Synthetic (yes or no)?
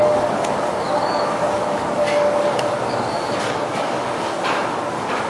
yes